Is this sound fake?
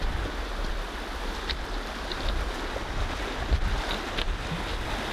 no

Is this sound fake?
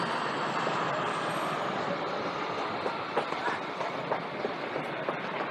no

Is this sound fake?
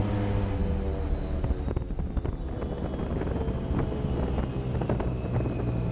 no